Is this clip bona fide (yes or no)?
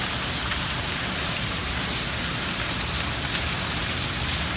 no